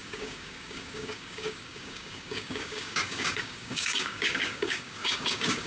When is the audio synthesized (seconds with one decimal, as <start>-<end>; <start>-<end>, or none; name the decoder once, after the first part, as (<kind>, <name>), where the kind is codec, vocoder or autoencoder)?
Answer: 0.0-5.7 (codec, DAC)

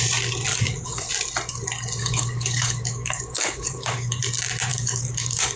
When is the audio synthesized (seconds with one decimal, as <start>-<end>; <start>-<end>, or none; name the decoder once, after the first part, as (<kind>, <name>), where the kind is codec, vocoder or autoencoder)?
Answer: 0.5-1.1 (codec, DAC); 2.0-4.2; 4.7-5.6

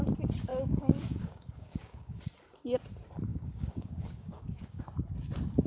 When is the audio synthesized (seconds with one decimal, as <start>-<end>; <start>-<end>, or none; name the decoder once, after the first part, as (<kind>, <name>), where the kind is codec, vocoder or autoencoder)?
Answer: 0.5-2.2 (codec, DAC); 3.3-4.8

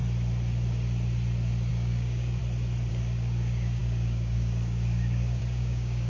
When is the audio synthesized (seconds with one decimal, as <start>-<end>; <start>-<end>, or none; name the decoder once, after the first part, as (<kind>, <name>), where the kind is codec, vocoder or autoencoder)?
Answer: 1.7-2.4 (codec, DAC); 2.9-6.1

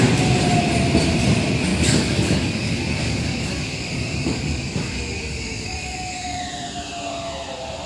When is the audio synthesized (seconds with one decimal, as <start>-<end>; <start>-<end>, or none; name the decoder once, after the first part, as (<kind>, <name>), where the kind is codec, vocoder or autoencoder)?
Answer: 1.7-6.4 (codec, DAC)